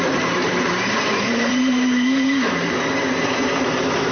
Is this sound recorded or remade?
remade